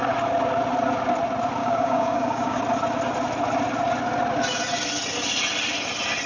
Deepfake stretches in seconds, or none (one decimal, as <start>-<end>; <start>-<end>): 1.6-2.6